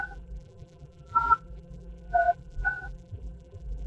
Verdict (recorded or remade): remade